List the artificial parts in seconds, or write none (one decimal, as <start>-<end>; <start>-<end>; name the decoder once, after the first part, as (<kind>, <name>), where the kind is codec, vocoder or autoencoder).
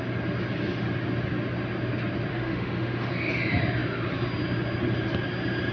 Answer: 2.3-3.1 (autoencoder, DAC-VAE)